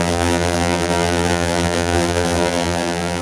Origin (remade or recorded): remade